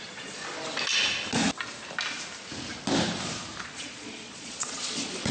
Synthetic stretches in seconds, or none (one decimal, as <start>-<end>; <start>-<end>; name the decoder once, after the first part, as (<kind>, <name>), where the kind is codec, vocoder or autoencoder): 0.0-0.4 (vocoder, Vocos); 3.6-5.3